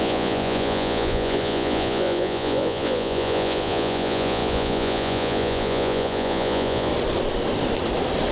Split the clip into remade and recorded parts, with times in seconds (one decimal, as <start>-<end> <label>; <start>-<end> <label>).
0.0-6.9 remade; 6.9-8.3 recorded